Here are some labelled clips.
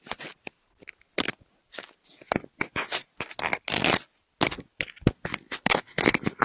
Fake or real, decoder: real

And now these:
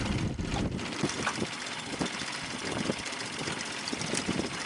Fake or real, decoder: fake, vocoder, BigVGAN v2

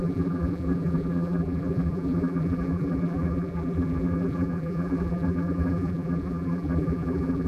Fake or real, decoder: fake, vocoder, BigVGAN v2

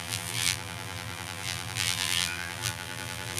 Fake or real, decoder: fake, vocoder, BigVGAN v2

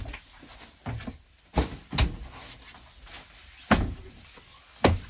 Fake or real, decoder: real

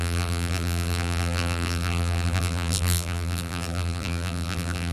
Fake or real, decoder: fake, vocoder, BigVGAN v2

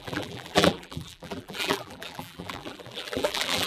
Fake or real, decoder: fake, vocoder, BigVGAN v2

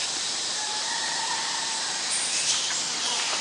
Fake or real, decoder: real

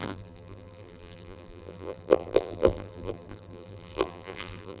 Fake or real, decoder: fake, vocoder, BigVGAN v2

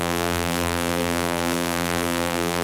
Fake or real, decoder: fake, vocoder, BigVGAN v2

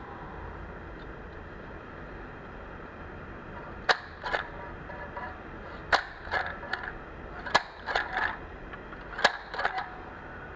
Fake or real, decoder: real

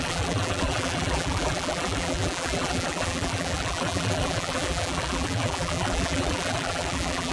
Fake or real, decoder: fake, vocoder, BigVGAN v2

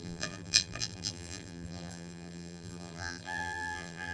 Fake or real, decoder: fake, vocoder, BigVGAN v2